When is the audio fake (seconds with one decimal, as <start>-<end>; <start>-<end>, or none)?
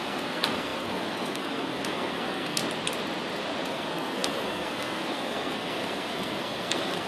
0.0-2.6; 3.7-7.1